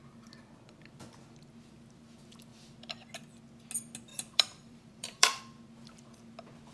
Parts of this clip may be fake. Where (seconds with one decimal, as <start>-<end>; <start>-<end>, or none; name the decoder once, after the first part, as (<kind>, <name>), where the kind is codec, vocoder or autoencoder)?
4.1-5.4 (vocoder, BigVGAN v2)